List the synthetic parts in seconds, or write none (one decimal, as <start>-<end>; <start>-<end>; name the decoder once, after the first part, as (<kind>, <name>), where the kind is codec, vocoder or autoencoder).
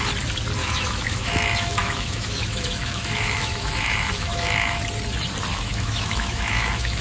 0.6-4.8 (autoencoder, DAC-VAE); 5.5-7.0